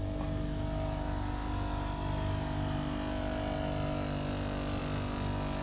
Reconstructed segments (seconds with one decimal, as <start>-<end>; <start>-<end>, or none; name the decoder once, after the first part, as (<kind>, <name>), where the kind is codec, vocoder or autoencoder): none